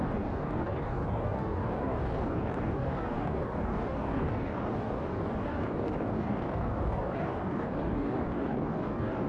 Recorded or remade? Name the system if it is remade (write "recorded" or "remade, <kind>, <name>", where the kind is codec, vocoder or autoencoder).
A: remade, codec, DAC